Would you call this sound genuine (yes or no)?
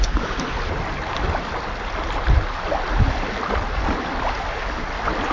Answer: yes